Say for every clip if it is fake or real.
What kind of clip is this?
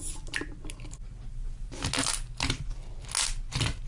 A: real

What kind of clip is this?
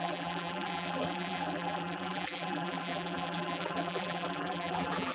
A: fake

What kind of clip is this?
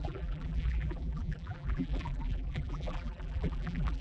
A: fake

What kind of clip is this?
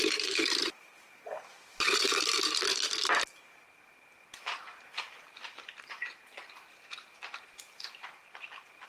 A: fake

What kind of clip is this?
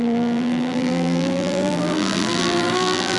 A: fake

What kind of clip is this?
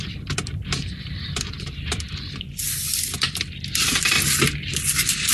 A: fake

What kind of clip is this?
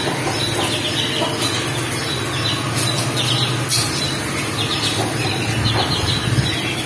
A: real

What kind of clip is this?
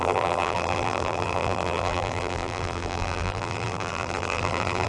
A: fake